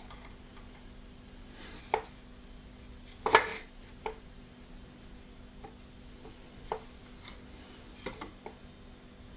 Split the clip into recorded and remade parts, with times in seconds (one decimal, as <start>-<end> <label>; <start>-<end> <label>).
0.0-0.5 recorded; 0.5-1.8 remade; 1.8-3.5 recorded; 3.5-4.7 remade; 4.7-9.4 recorded